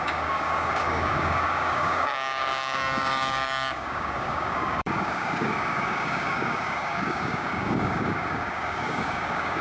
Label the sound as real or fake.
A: fake